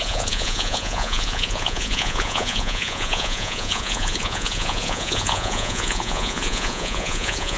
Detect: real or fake fake